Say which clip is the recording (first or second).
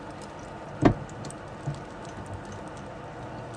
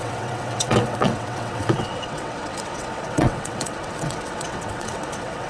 first